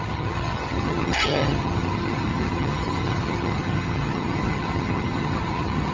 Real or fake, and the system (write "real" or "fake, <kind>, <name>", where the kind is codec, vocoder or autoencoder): fake, vocoder, HiFi-GAN